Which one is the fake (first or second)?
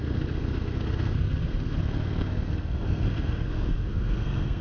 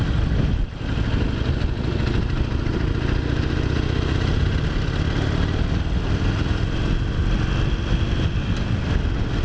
first